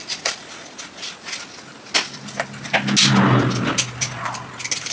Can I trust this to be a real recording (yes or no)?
yes